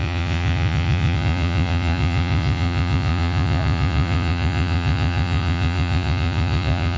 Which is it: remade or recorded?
remade